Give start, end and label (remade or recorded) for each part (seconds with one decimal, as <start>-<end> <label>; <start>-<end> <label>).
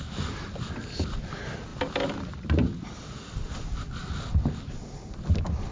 0.0-5.7 recorded